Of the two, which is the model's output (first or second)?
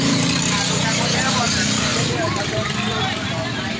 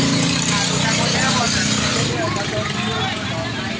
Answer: first